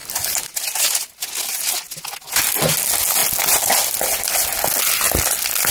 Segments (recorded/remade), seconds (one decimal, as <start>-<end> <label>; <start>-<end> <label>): 0.0-5.7 recorded